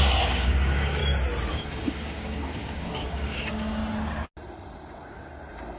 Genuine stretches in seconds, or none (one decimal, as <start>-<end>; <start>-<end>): 1.0-1.5; 3.8-5.8